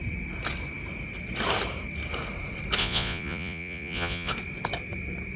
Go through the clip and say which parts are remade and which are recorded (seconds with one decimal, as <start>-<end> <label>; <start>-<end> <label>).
0.0-2.8 recorded; 2.8-4.3 remade; 4.3-5.4 recorded